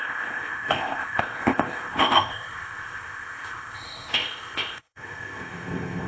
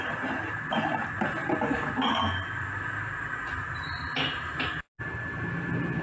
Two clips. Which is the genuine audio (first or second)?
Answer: second